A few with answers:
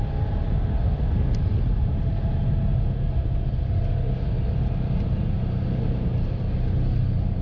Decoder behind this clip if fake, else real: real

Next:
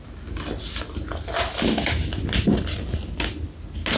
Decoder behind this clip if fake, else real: real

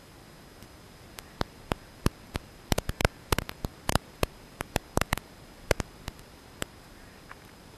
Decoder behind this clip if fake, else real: fake, vocoder, BigVGAN v2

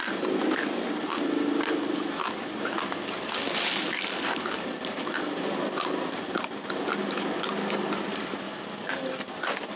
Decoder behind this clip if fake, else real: real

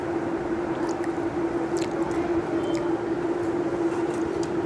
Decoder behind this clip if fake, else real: real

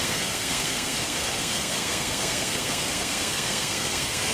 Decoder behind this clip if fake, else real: fake, codec, SNAC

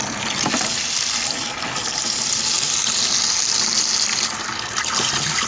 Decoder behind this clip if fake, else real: real